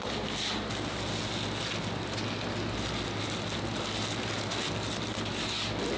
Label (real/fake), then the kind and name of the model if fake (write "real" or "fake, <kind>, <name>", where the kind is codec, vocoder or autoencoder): real